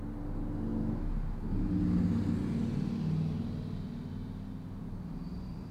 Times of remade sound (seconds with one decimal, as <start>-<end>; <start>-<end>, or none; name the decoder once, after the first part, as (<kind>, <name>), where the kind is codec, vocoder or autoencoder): none